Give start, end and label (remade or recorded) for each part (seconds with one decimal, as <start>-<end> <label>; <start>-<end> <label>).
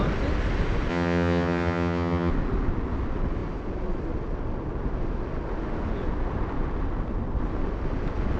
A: 0.0-0.9 recorded; 0.9-2.3 remade; 2.3-8.4 recorded